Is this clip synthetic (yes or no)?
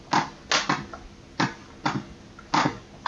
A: no